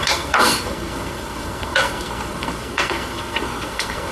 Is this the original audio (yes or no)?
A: no